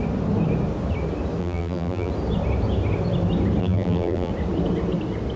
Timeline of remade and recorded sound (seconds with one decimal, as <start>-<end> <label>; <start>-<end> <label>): 0.0-1.4 recorded; 1.4-2.1 remade; 2.1-3.6 recorded; 3.6-4.3 remade; 4.3-5.4 recorded